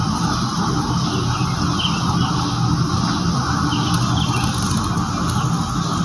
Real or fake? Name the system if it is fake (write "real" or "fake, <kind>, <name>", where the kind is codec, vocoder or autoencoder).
real